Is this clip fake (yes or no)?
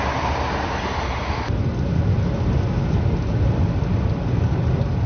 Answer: no